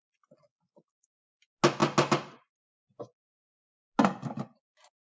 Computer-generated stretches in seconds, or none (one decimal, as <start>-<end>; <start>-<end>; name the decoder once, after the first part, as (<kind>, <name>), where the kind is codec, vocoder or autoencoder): none